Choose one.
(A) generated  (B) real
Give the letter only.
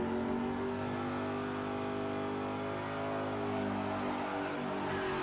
B